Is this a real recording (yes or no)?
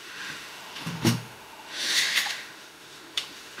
no